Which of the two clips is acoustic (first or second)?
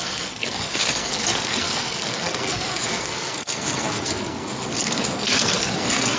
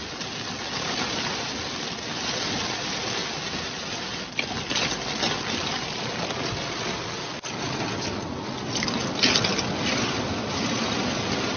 second